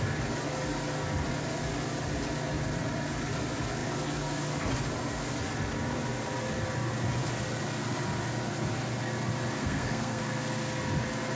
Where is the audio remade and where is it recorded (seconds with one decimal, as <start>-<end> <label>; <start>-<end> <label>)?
0.0-9.6 recorded; 9.6-10.2 remade; 10.2-11.4 recorded

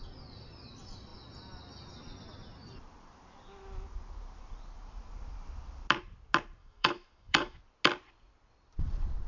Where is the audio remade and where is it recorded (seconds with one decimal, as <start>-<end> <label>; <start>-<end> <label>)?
0.0-6.6 recorded; 6.6-7.6 remade; 7.6-9.3 recorded